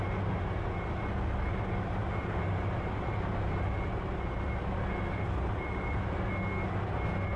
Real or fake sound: real